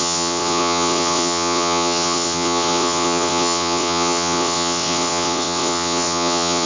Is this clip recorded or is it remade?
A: remade